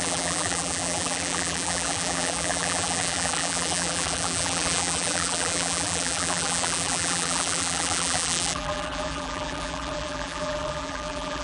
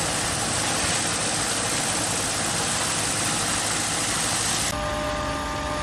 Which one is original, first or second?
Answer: second